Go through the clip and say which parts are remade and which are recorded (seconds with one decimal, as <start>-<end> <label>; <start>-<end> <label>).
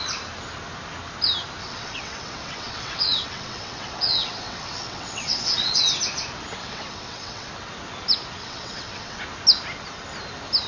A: 0.0-1.6 recorded; 1.6-5.8 remade; 5.8-6.6 recorded; 6.6-7.5 remade; 7.5-8.4 recorded; 8.4-9.2 remade; 9.2-10.7 recorded